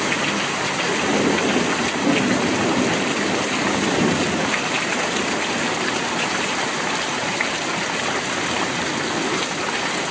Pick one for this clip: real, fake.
real